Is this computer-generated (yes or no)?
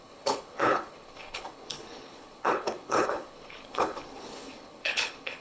yes